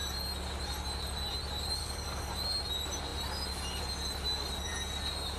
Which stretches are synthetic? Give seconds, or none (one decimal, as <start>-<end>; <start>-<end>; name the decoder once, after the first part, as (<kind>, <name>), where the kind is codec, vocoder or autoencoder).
1.8-2.3 (codec, DAC)